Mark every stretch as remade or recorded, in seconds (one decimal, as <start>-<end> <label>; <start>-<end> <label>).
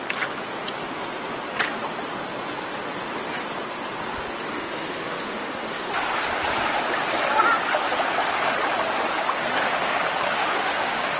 0.0-4.5 recorded; 4.5-5.9 remade; 5.9-9.7 recorded; 9.7-11.2 remade